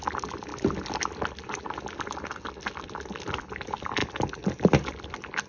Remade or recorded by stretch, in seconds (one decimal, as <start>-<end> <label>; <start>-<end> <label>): 0.0-5.5 recorded